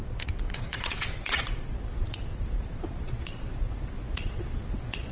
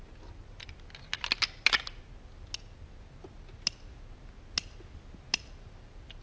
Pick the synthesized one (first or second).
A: first